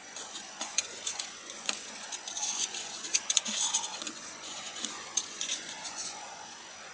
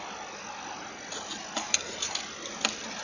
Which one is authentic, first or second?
second